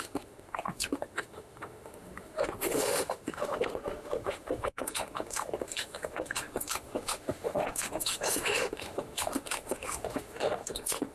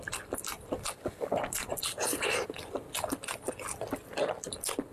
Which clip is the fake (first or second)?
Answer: first